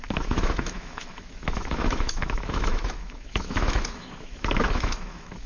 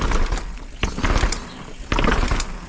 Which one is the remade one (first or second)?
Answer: first